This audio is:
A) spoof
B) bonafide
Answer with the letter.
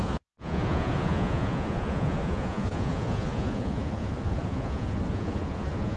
A